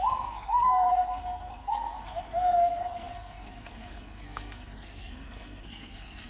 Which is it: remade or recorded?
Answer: remade